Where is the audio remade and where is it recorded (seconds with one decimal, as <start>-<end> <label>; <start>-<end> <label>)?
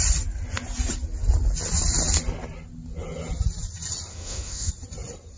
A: 0.0-4.1 recorded; 4.1-4.7 remade; 4.7-5.4 recorded